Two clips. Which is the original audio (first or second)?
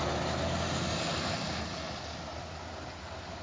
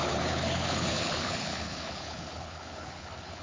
first